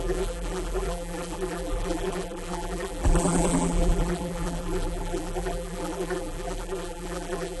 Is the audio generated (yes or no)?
yes